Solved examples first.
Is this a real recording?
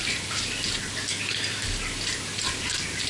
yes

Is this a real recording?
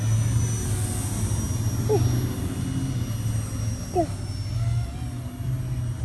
yes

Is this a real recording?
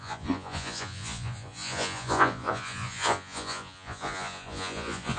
no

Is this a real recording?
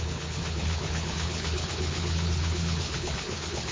no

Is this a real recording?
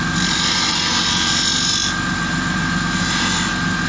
yes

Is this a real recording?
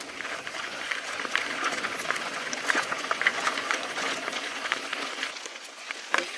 no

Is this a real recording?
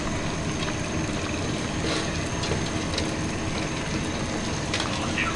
yes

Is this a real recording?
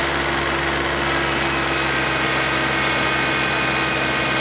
yes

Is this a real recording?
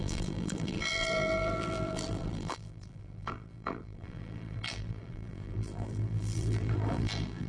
no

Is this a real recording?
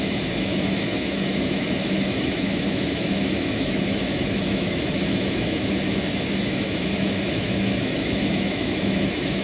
no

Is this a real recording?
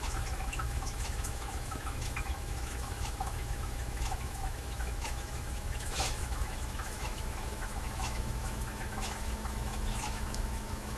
no